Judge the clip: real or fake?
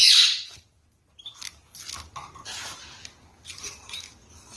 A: real